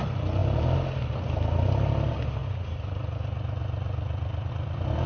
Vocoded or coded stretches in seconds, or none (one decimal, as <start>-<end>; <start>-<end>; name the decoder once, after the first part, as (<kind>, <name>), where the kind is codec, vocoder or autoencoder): none